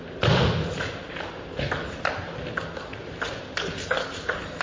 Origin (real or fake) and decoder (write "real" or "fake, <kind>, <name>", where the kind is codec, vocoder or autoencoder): real